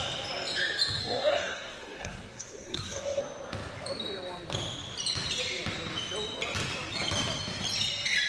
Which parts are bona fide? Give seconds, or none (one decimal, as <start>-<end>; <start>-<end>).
0.0-1.0; 3.2-8.3